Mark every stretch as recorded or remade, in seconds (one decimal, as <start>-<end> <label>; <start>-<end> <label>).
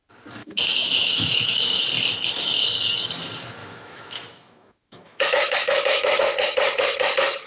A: 0.0-0.4 recorded; 0.4-1.8 remade; 1.8-3.6 recorded; 3.6-6.2 remade; 6.2-7.5 recorded